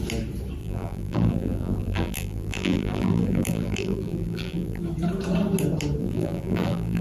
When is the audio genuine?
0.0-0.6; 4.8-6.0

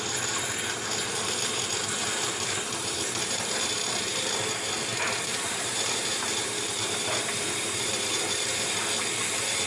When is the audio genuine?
0.0-2.0; 3.8-5.3; 8.8-9.7

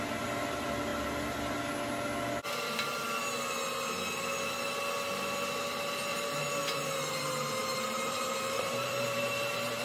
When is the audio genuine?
0.0-6.1

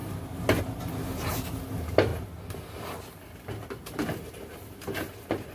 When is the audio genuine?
0.0-5.5

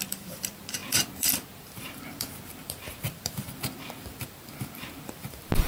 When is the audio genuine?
none

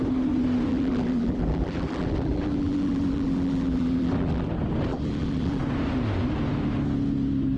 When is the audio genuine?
0.0-0.7; 4.5-4.9; 5.6-7.6